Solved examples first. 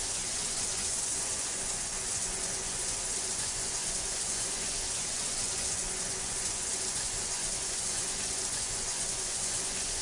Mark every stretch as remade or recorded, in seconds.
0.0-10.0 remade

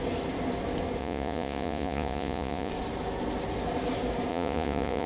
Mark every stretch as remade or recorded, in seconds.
0.0-1.0 recorded; 1.0-2.7 remade; 2.7-4.3 recorded; 4.3-5.1 remade

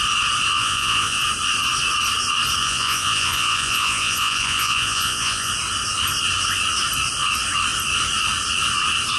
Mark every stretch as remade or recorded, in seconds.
0.0-0.6 recorded; 0.6-1.2 remade; 1.2-2.6 recorded; 2.6-5.5 remade; 5.5-9.2 recorded